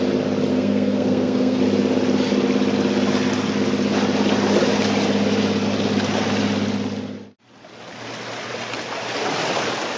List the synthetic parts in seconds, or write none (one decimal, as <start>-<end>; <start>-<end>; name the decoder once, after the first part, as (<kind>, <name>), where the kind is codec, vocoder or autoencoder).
0.5-1.6 (codec, SNAC)